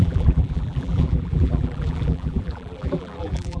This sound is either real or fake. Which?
fake